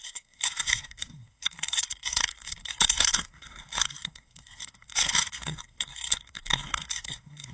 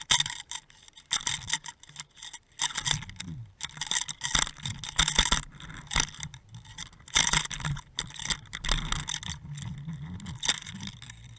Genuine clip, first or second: second